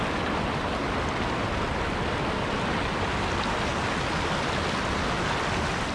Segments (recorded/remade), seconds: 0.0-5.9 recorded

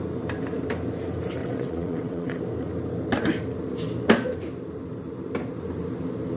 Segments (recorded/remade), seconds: 0.0-1.4 recorded; 1.4-2.4 remade; 2.4-6.4 recorded

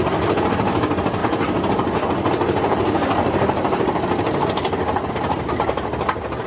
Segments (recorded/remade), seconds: 0.0-1.2 recorded; 1.2-5.1 remade; 5.1-6.5 recorded

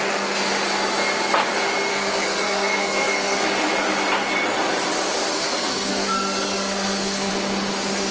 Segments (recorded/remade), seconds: 0.0-1.9 recorded; 1.9-3.4 remade; 3.4-5.3 recorded; 5.3-7.3 remade; 7.3-8.1 recorded